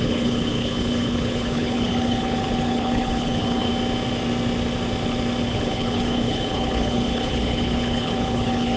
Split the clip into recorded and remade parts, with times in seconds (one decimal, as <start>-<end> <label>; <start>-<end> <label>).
0.0-3.7 remade; 3.7-5.4 recorded; 5.4-8.8 remade